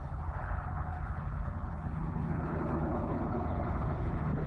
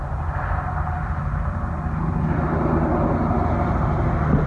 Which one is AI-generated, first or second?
first